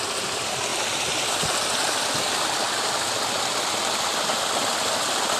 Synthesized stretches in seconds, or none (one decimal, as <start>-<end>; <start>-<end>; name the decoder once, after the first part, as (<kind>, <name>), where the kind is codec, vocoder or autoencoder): none